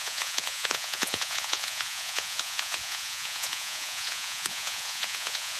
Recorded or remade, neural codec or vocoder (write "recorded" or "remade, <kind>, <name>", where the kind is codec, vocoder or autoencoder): remade, vocoder, Vocos